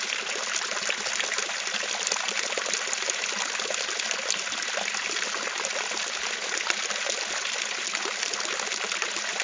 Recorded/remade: recorded